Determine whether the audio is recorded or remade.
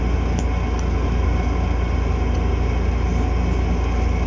recorded